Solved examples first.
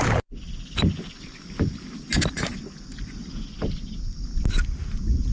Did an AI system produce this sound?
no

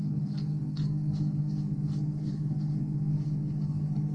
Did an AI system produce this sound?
yes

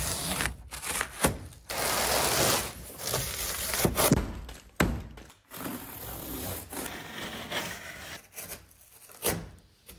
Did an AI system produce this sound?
no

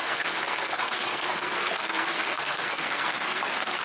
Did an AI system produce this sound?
yes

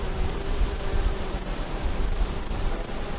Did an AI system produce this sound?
yes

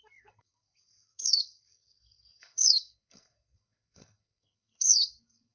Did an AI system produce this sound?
yes